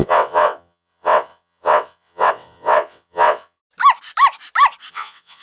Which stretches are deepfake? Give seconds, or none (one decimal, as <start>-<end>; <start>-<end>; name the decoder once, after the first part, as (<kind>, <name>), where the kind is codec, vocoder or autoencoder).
0.0-3.6 (vocoder, WaveNeXt); 4.9-5.4